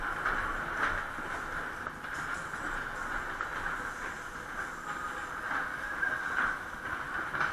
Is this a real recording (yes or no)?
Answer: yes